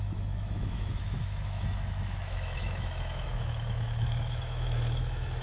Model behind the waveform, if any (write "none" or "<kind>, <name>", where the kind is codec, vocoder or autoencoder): autoencoder, DAC-VAE